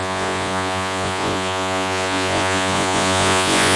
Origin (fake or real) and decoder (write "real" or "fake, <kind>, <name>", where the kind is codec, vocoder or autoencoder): fake, vocoder, Vocos